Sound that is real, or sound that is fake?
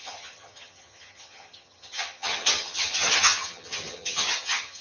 fake